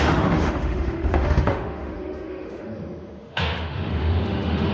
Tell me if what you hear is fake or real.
fake